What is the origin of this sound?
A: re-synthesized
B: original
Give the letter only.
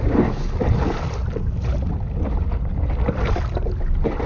B